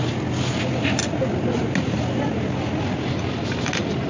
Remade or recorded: recorded